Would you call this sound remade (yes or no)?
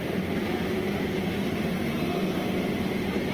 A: no